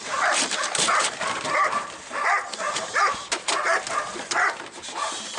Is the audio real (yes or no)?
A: no